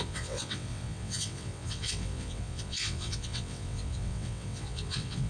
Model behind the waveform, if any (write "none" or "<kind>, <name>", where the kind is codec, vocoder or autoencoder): vocoder, WaveNeXt